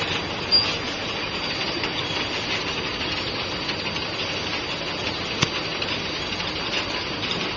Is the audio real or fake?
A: real